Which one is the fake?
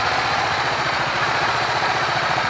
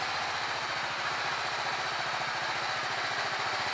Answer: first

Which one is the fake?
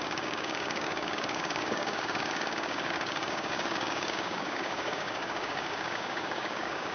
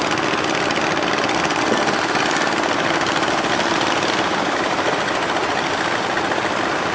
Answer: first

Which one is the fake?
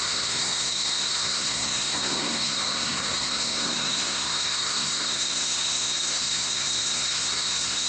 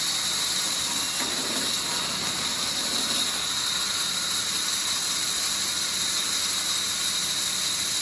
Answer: first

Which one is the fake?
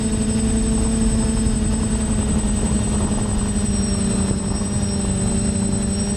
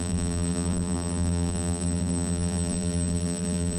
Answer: second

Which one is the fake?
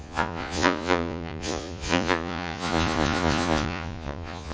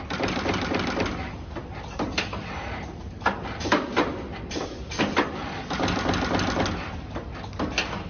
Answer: first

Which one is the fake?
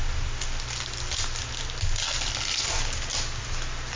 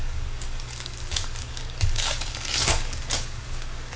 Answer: second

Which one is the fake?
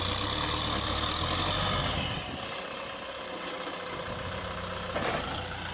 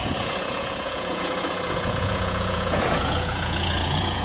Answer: second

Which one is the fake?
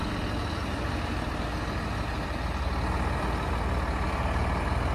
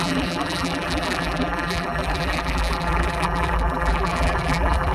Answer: second